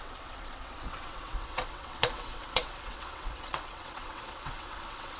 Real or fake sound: fake